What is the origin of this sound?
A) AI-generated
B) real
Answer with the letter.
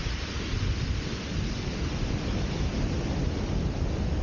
B